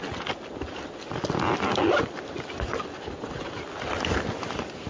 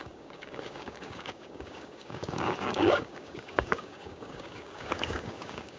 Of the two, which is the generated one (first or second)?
second